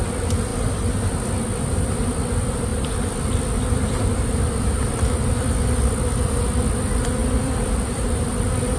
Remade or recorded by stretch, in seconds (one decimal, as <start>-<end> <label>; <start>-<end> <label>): 0.0-2.7 recorded; 2.7-3.4 remade; 3.4-7.2 recorded; 7.2-8.3 remade; 8.3-8.8 recorded